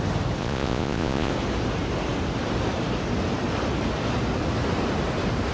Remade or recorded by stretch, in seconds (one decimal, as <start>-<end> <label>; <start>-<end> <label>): 0.0-0.4 recorded; 0.4-1.3 remade; 1.3-5.5 recorded